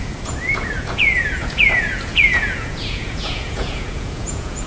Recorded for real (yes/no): no